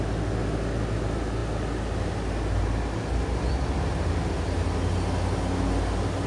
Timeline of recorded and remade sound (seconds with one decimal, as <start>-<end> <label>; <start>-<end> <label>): 0.0-6.3 recorded

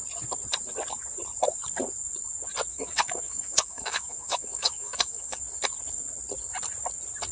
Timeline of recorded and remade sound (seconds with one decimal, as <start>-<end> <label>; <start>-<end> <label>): 0.0-2.7 recorded; 2.7-5.4 remade; 5.4-7.3 recorded